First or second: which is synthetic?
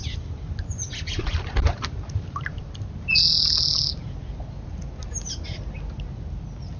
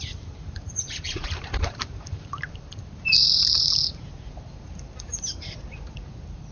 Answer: second